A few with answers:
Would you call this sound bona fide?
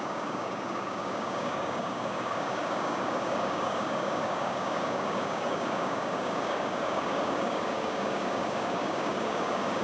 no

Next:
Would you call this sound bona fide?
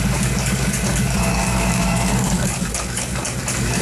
no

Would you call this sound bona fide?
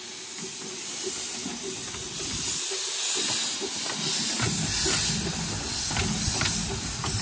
yes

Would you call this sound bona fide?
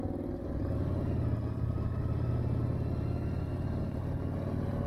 yes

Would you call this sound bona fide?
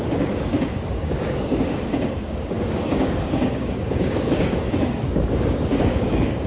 no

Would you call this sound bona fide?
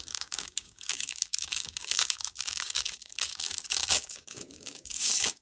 no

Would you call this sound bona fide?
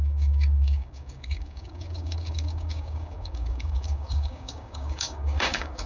no